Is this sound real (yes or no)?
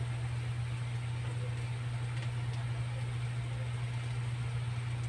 yes